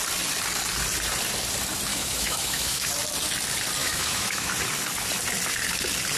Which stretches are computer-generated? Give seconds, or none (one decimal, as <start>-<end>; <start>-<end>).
1.9-2.9; 3.8-4.5